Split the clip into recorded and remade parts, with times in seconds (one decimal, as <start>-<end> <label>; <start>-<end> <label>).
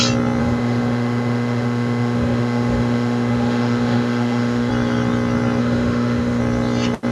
0.0-0.4 recorded; 0.4-4.7 remade; 4.7-5.6 recorded; 5.6-6.4 remade; 6.4-7.1 recorded